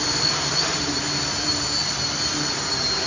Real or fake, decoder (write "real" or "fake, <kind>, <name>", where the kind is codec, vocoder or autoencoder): real